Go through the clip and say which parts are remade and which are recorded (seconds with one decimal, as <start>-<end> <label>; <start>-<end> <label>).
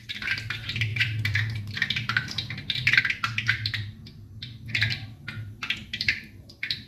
0.0-0.9 recorded; 0.9-3.0 remade; 3.0-5.8 recorded; 5.8-6.9 remade